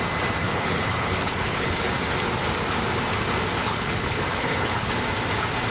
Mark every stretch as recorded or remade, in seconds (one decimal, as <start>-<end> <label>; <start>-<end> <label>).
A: 0.0-0.4 recorded; 0.4-1.9 remade; 1.9-3.6 recorded; 3.6-4.9 remade; 4.9-5.7 recorded